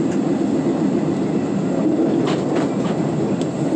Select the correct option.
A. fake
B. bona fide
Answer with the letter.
B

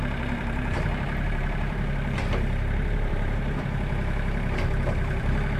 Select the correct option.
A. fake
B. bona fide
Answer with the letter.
A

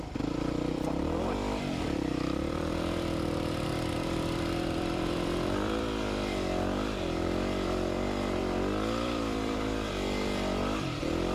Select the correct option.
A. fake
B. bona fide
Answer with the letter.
A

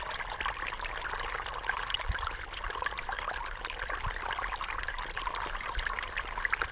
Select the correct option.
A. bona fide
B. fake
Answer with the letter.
B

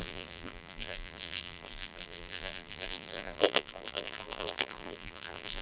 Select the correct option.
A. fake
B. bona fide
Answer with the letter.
A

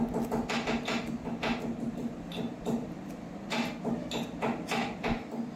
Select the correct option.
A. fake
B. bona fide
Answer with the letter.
B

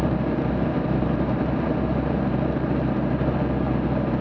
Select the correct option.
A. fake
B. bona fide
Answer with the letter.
A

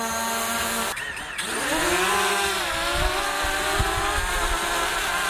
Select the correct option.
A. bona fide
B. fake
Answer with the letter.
A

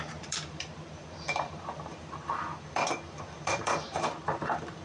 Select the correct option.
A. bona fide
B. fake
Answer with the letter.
B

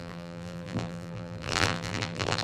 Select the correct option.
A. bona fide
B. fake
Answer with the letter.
B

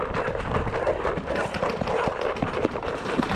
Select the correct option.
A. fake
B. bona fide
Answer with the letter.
A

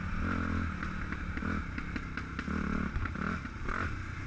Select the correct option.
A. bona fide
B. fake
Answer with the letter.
A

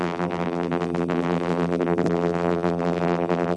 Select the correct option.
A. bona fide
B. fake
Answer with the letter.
B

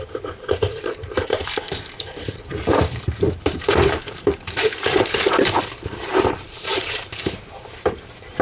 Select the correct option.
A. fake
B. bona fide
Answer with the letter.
A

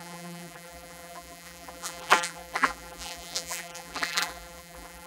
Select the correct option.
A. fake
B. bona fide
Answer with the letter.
A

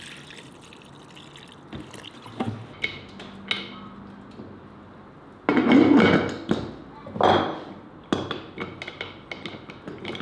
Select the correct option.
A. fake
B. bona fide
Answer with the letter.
B